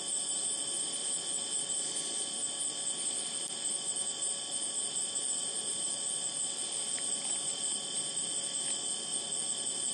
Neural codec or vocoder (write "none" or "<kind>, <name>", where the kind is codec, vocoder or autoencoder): none